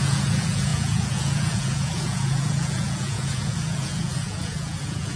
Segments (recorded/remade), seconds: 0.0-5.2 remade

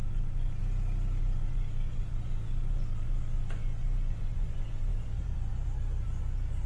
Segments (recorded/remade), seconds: 0.0-0.6 remade; 0.6-1.2 recorded; 1.2-6.7 remade

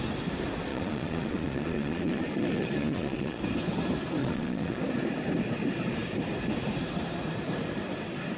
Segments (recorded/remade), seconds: 0.0-0.7 recorded; 0.7-3.4 remade; 3.4-4.2 recorded; 4.2-4.8 remade; 4.8-8.4 recorded

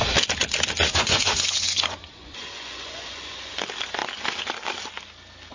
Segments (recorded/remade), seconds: 0.0-0.8 recorded; 0.8-3.5 remade; 3.5-5.5 recorded